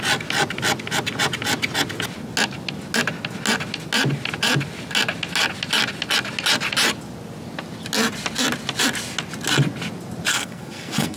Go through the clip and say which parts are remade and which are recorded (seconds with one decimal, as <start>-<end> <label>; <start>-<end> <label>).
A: 0.0-10.3 recorded; 10.3-11.2 remade